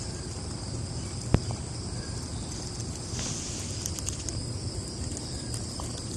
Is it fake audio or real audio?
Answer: fake